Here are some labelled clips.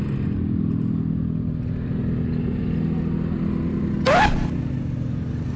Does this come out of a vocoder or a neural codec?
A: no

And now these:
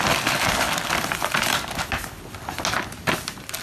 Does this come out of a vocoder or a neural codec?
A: no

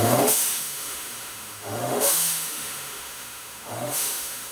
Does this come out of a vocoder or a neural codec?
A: yes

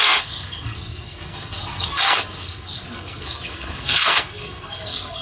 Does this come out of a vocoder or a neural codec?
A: yes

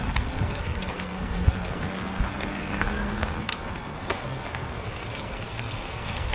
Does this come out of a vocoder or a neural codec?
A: yes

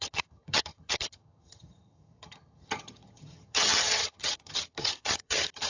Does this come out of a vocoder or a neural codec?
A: yes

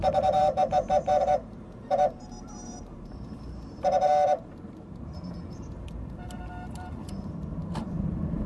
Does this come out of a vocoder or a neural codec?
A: yes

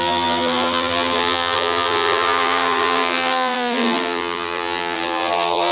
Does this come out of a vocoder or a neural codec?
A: yes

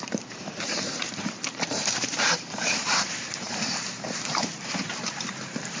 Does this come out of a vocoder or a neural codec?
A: yes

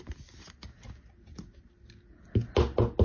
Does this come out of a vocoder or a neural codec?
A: no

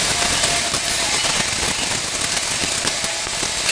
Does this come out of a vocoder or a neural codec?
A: no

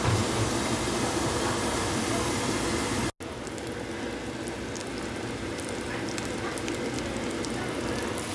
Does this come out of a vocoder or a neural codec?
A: no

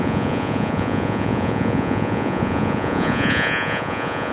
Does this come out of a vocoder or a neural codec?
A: yes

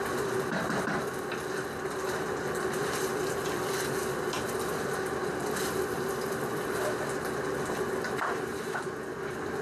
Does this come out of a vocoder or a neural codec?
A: no